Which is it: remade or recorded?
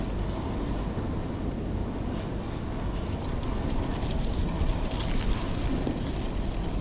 recorded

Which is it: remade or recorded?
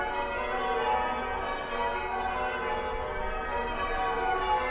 recorded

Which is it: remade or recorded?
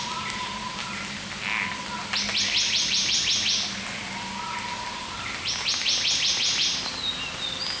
recorded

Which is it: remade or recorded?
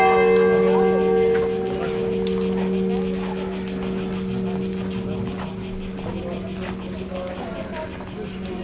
recorded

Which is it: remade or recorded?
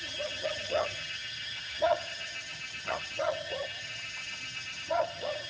remade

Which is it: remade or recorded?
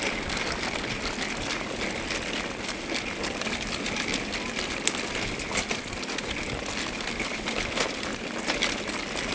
recorded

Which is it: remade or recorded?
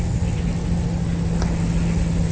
recorded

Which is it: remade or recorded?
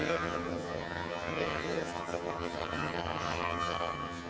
remade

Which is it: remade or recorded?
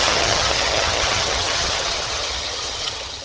remade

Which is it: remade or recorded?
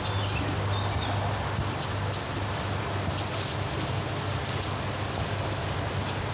recorded